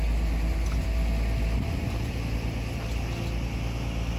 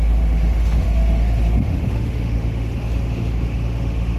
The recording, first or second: first